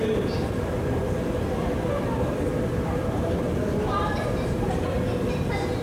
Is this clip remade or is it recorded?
recorded